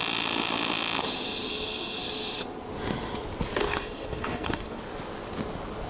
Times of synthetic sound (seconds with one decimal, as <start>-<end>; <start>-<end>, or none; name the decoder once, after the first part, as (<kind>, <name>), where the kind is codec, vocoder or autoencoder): 1.5-2.0 (codec, SNAC); 3.6-4.8